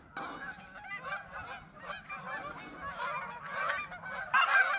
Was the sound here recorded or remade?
recorded